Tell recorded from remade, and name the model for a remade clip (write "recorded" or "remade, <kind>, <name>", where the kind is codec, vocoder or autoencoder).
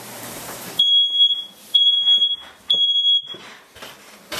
remade, vocoder, BigVGAN v2